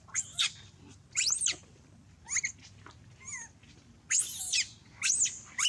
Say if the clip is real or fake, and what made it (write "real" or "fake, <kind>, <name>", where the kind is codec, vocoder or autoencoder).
real